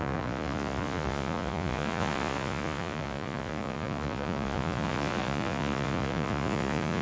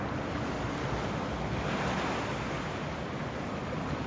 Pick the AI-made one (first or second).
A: first